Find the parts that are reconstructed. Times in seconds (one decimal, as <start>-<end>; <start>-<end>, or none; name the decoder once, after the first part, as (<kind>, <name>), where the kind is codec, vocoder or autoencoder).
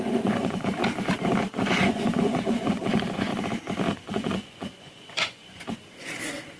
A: 0.0-0.8 (vocoder, Vocos); 1.5-3.3; 3.9-6.6